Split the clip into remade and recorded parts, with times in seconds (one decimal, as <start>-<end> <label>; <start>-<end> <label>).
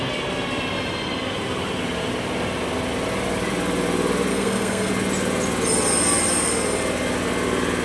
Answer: 0.0-4.3 recorded; 4.3-4.9 remade; 4.9-7.8 recorded